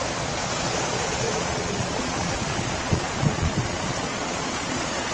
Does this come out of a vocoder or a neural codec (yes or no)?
yes